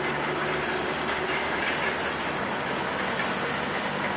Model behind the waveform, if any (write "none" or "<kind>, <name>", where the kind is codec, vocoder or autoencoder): none